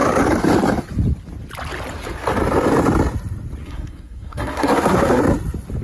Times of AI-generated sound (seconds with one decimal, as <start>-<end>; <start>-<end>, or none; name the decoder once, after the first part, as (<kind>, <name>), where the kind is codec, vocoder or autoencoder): 3.6-5.2 (codec, SNAC)